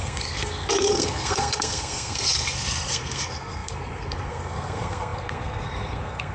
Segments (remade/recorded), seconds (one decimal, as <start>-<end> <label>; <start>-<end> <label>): 0.0-6.3 remade